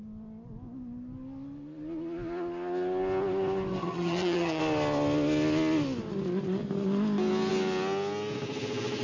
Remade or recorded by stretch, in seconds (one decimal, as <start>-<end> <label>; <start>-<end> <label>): 0.0-3.8 recorded; 3.8-4.6 remade; 4.6-9.0 recorded